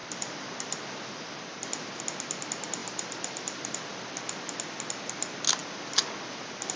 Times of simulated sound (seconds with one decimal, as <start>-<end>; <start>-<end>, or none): 0.0-2.0; 2.8-4.1; 5.6-6.8